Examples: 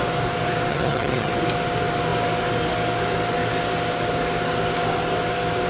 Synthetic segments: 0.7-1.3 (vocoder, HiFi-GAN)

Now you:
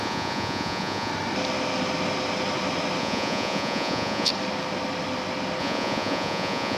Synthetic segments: 0.0-1.1 (vocoder, Vocos); 3.0-4.3; 5.6-6.8

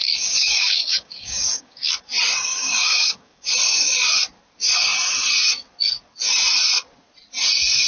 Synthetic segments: 0.0-1.9 (codec, DAC); 2.5-3.5

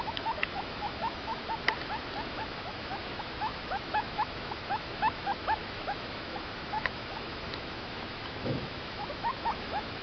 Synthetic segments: 0.0-1.4 (autoencoder, DAC-VAE); 2.4-10.0

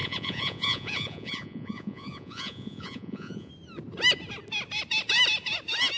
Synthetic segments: 0.0-3.5 (vocoder, Vocos)

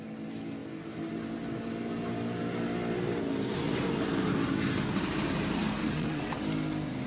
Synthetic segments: 5.8-6.4 (vocoder, WaveNeXt)

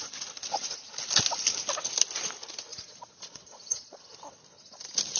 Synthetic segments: 2.7-4.0 (vocoder, Vocos)

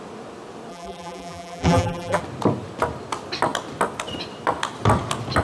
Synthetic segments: 0.7-2.2 (vocoder, BigVGAN v2)